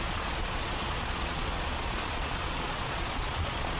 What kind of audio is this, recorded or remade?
remade